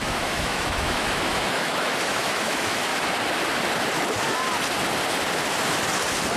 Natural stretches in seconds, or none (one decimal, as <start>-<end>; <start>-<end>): 2.9-6.4